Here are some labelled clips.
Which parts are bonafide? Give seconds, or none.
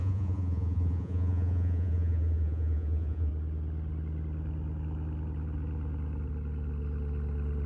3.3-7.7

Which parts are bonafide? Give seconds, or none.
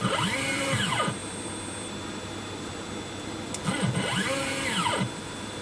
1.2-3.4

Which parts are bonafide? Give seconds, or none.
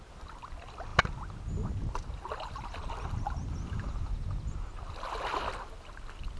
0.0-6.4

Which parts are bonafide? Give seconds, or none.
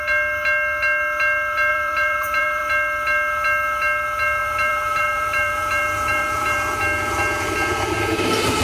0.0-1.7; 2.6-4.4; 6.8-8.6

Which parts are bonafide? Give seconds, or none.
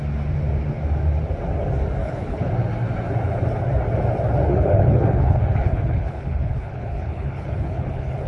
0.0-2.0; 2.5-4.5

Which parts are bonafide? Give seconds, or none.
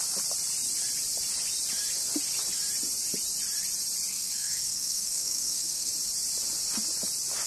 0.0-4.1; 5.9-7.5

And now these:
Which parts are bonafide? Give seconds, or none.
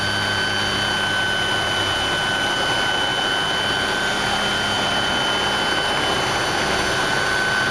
0.0-7.7